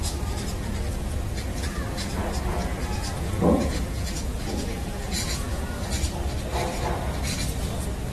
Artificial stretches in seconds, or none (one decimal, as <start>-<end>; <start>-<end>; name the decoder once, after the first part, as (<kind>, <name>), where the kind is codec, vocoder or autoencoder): 1.5-5.9 (vocoder, BigVGAN v2)